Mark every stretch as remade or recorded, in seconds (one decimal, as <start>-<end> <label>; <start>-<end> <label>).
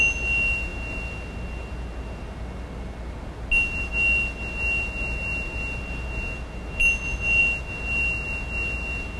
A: 0.0-9.2 recorded